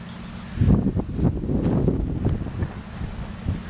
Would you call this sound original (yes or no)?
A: yes